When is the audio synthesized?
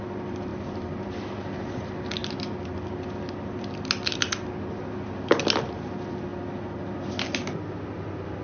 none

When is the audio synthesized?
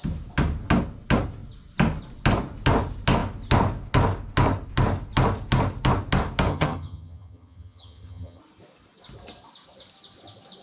6.5-8.4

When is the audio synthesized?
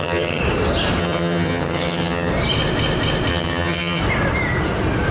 0.0-0.4; 1.0-2.3; 3.3-4.0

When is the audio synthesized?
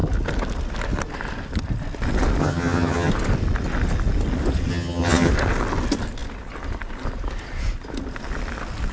2.4-3.1; 4.7-5.3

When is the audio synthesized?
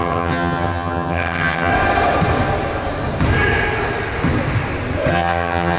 0.0-1.7; 5.1-5.8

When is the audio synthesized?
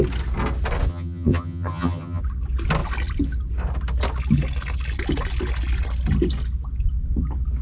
0.9-2.2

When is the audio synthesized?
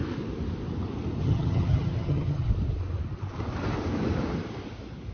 1.2-2.5